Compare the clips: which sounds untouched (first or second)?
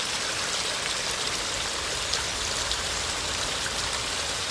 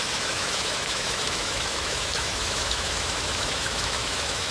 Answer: first